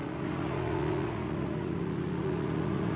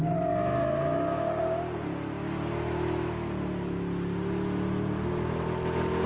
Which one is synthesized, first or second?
first